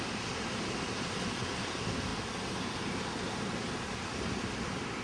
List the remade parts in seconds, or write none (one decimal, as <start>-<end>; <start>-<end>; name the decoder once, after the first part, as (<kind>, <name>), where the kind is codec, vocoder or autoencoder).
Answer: none